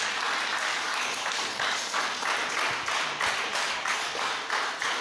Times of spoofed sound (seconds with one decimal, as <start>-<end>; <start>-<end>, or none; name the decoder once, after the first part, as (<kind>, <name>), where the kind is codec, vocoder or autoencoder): 0.7-2.0 (codec, DAC); 3.5-4.3